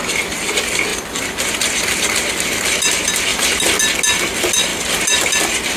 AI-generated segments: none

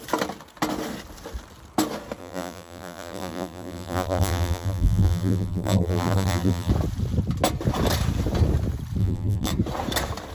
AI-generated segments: 2.2-6.7; 9.0-9.5

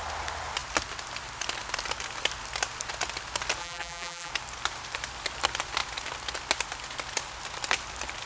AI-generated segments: 3.6-4.3

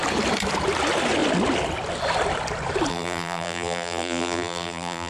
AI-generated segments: 2.9-5.1

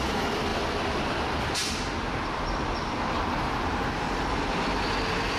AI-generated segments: none

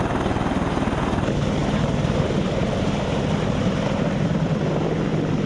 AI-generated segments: 1.6-4.6

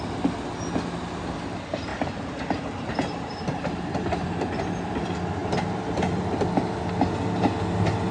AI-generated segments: 5.4-6.2